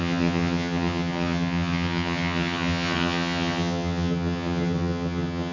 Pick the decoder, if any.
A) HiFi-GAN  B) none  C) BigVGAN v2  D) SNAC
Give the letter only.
A